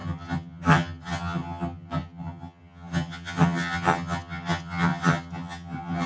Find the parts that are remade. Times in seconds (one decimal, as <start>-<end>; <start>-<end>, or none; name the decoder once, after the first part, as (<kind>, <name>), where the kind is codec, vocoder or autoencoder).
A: 0.0-6.1 (vocoder, HiFi-GAN)